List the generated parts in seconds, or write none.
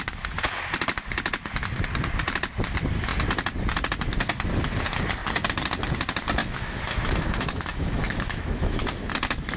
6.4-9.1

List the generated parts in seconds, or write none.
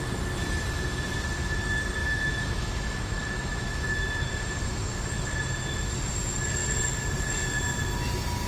2.0-5.9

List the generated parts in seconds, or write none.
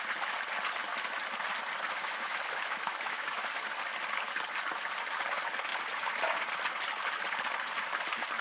2.0-3.5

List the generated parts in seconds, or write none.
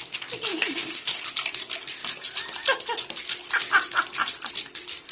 0.5-1.2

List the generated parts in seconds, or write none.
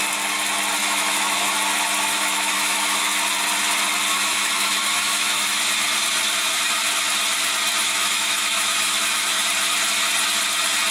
0.8-1.5; 2.1-3.0; 4.1-5.6; 7.8-9.4